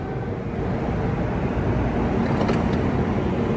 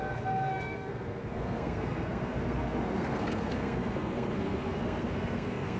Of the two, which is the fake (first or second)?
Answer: second